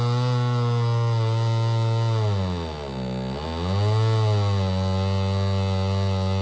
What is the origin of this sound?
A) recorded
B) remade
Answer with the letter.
A